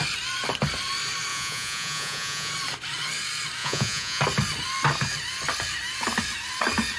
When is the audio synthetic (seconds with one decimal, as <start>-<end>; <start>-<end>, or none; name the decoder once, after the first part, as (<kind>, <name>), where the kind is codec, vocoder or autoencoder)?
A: 1.3-2.5 (vocoder, Vocos); 3.6-4.2